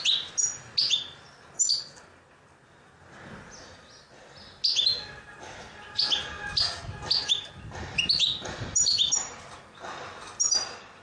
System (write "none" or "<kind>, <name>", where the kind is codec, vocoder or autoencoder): none